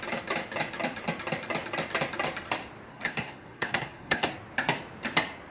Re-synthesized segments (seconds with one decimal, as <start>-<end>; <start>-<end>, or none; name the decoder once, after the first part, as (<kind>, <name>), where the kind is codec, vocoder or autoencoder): 2.9-4.3 (codec, SNAC)